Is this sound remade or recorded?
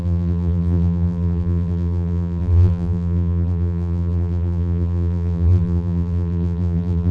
remade